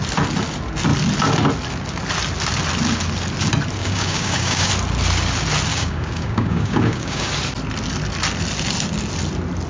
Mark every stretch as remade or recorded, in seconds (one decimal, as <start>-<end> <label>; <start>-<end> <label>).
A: 0.0-3.8 recorded; 3.8-4.7 remade; 4.7-5.7 recorded; 5.7-7.3 remade; 7.3-9.7 recorded